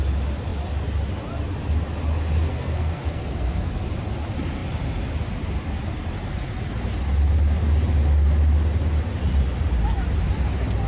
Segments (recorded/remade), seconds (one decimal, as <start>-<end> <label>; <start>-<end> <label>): 0.0-2.5 recorded; 2.5-3.7 remade; 3.7-10.9 recorded